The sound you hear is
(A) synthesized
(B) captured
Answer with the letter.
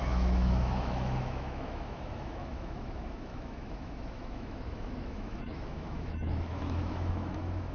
A